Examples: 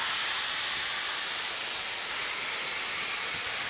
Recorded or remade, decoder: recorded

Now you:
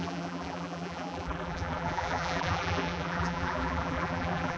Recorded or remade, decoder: remade, vocoder, BigVGAN v2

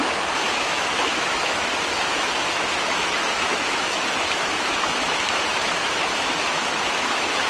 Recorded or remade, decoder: remade, autoencoder, DAC-VAE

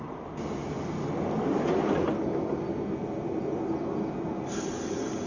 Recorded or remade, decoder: recorded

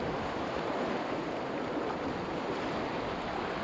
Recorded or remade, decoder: recorded